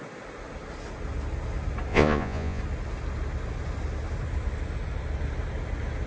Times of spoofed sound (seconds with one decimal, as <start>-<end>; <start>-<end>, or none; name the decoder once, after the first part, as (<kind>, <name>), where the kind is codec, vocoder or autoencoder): 1.9-2.6 (vocoder, Vocos)